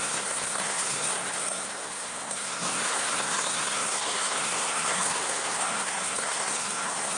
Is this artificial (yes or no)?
yes